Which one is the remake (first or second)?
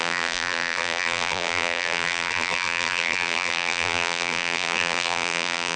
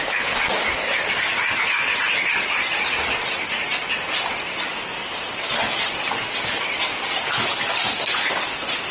first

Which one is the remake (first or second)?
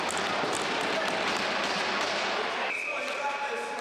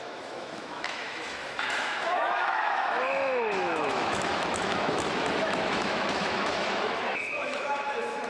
second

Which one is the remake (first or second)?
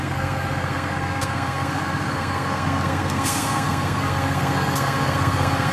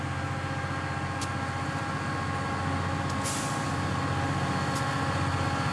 first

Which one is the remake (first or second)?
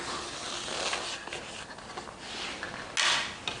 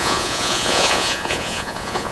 second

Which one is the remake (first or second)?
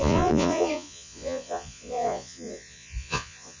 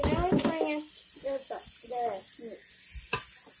first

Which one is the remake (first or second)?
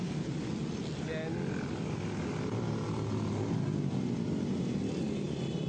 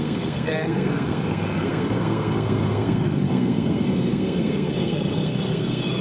second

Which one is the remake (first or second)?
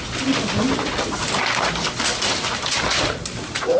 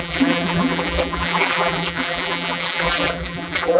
second